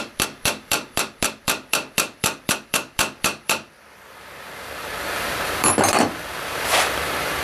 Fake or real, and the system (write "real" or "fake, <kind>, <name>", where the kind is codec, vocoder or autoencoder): fake, vocoder, BigVGAN v2